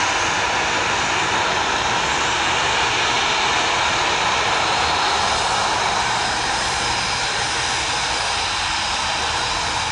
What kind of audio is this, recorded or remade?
recorded